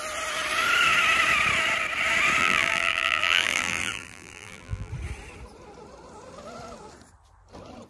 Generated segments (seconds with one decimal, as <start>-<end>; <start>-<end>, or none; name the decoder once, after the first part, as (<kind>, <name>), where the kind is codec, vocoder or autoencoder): 2.4-4.9 (vocoder, BigVGAN v2)